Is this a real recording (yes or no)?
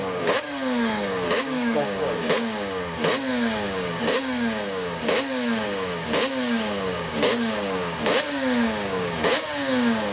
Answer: no